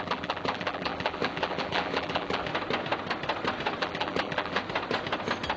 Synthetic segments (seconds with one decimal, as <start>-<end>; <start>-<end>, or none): 0.0-2.5; 3.8-4.6